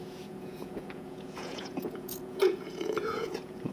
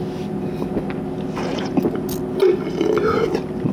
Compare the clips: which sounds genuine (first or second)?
second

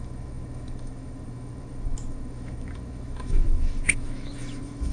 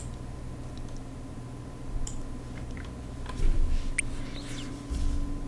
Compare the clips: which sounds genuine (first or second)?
second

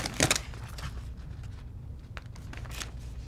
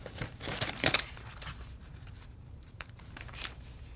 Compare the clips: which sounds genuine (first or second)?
first